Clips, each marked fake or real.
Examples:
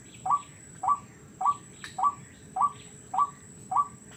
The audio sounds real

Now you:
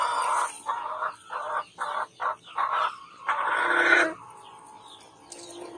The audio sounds real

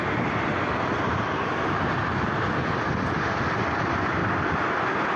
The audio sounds real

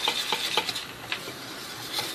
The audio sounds real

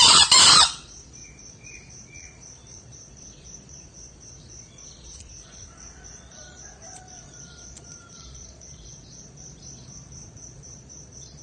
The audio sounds fake